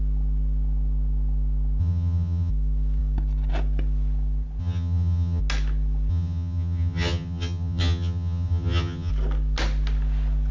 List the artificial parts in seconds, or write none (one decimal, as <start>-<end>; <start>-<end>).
1.8-2.5; 4.6-5.4; 6.1-9.1